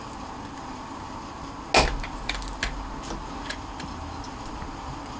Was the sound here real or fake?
real